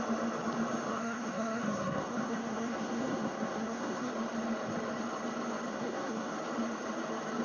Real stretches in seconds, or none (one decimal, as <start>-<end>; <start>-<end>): 0.0-0.9; 4.1-5.7; 6.3-7.4